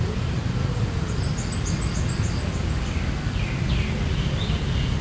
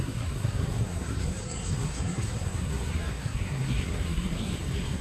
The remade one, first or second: second